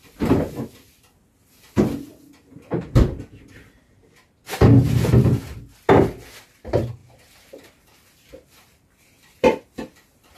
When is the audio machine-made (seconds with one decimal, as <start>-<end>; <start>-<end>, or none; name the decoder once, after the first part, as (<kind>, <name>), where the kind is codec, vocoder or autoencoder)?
2.1-5.6 (vocoder, BigVGAN v2); 7.0-10.4